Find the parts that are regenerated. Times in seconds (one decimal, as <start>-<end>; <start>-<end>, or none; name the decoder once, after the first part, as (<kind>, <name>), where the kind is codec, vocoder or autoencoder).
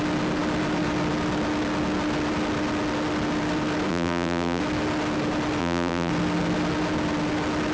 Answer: 3.9-4.6 (vocoder, BigVGAN v2); 5.6-6.1